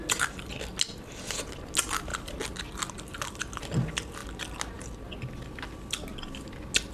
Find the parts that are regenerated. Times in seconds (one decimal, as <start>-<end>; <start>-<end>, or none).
none